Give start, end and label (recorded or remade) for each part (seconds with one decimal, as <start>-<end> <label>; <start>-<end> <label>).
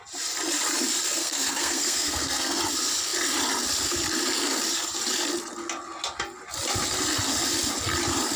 0.0-1.2 recorded; 1.2-2.6 remade; 2.6-8.4 recorded